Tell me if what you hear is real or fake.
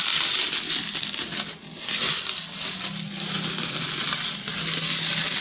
real